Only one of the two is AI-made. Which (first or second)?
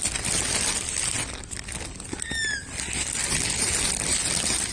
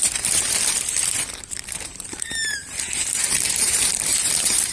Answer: second